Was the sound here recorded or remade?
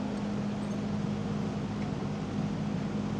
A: recorded